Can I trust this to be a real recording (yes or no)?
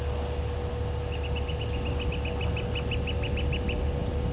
yes